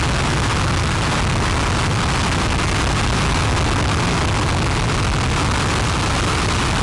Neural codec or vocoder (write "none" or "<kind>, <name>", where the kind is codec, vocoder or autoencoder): none